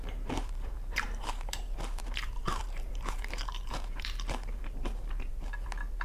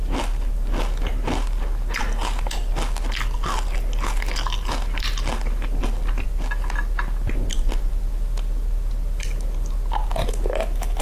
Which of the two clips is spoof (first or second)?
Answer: first